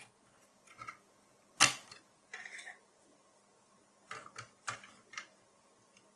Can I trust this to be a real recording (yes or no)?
yes